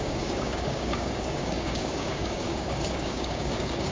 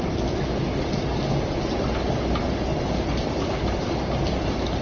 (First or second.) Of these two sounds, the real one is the second